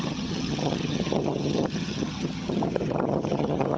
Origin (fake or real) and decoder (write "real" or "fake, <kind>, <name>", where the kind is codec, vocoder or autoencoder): fake, vocoder, HiFi-GAN